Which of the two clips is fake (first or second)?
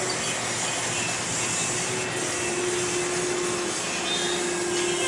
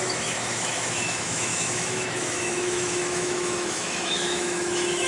second